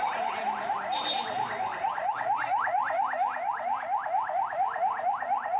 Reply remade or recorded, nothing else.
remade